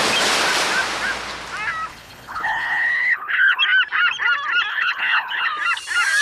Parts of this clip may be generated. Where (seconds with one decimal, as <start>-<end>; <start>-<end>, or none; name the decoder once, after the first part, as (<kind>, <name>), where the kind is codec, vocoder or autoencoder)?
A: 1.9-3.6 (codec, HILCodec); 4.7-5.5